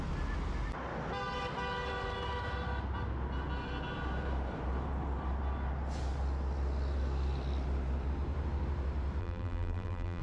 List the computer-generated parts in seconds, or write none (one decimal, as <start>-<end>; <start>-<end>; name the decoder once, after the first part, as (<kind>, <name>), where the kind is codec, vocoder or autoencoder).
9.2-10.2 (vocoder, BigVGAN v2)